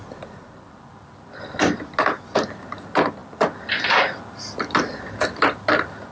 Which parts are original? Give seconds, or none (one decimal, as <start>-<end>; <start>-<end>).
0.0-6.1